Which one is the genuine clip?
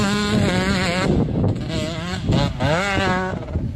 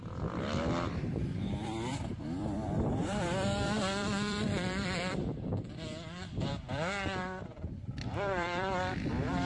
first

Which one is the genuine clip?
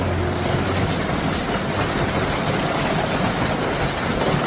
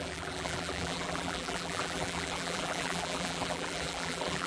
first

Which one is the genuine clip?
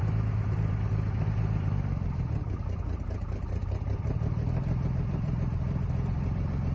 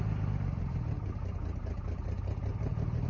second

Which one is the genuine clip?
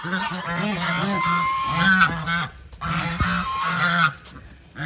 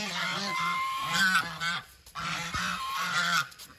first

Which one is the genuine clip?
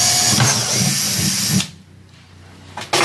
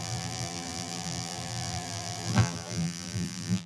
first